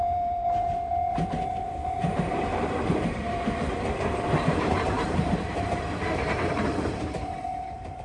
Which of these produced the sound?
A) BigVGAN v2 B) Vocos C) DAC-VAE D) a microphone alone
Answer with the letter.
A